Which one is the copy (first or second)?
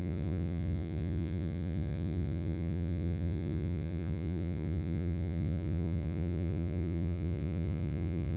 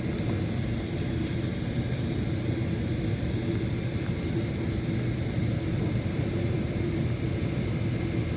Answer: first